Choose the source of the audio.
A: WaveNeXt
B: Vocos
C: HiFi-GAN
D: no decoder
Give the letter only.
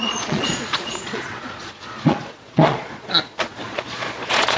B